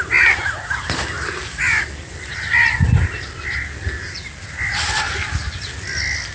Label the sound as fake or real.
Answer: real